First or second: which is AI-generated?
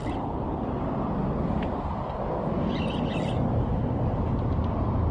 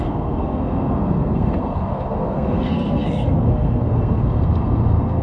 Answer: second